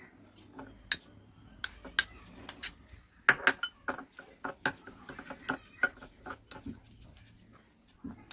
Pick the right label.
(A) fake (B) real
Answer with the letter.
B